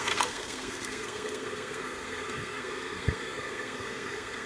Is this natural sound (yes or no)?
no